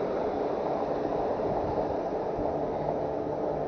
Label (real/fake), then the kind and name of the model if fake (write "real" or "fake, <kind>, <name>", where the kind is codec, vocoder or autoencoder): real